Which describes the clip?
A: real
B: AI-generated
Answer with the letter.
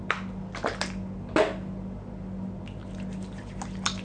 A